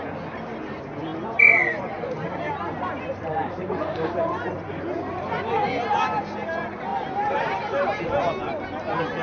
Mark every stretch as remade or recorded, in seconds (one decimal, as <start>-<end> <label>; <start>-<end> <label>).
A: 0.0-1.1 recorded; 1.1-4.8 remade; 4.8-6.9 recorded; 6.9-8.0 remade; 8.0-9.2 recorded